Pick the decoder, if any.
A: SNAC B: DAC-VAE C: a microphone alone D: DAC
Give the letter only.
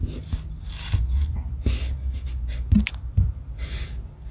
C